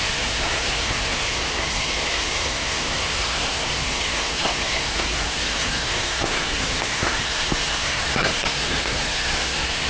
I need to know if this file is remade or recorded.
remade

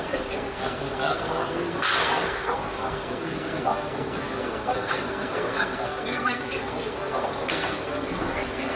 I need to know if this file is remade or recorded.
remade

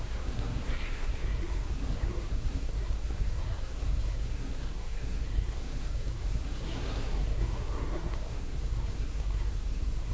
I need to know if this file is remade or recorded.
remade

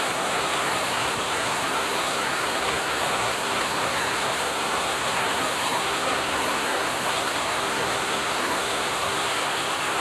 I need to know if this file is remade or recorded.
remade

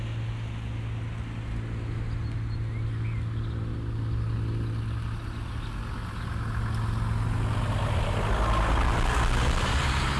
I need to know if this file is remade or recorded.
recorded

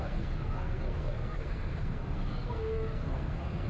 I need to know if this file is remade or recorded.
remade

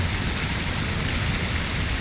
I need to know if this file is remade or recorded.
recorded